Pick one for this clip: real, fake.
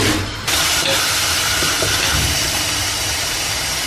real